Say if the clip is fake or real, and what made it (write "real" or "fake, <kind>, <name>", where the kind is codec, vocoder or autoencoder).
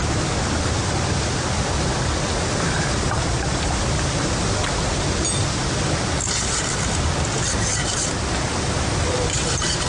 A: real